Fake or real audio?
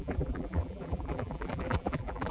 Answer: fake